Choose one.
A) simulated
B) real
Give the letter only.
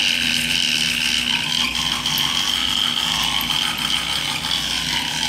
B